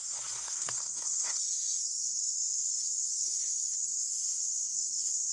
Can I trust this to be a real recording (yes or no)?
no